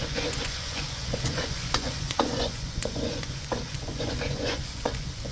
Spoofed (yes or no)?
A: yes